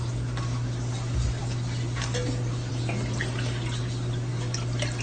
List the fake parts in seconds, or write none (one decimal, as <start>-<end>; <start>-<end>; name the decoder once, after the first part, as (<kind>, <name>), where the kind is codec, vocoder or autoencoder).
none